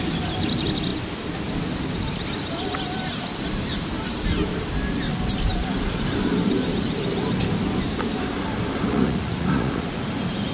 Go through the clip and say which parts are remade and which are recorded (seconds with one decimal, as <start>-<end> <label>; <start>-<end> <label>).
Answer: 0.0-8.9 recorded; 8.9-10.0 remade; 10.0-10.5 recorded